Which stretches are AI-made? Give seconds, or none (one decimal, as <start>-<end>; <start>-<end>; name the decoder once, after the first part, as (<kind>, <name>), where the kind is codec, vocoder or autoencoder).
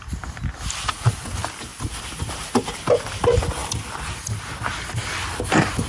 none